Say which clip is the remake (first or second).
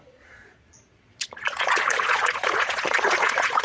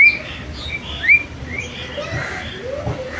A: first